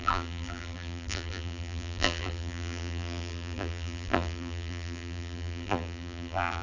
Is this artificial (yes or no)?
yes